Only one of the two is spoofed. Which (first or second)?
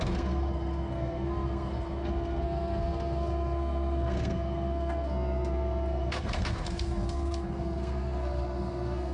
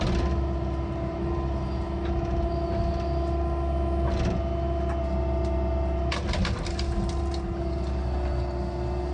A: first